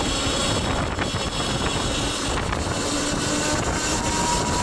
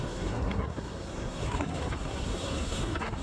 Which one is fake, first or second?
second